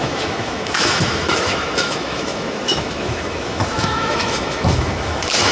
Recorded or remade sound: remade